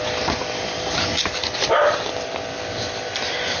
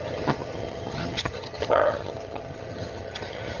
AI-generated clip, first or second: second